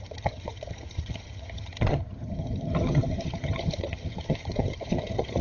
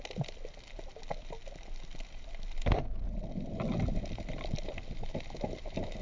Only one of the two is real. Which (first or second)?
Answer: second